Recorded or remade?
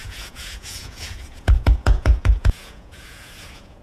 remade